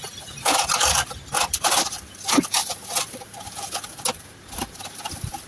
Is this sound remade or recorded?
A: remade